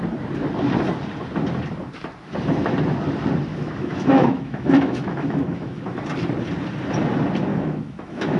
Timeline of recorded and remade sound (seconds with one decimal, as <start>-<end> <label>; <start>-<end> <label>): 0.0-3.5 recorded; 3.5-5.8 remade; 5.8-7.5 recorded; 7.5-8.4 remade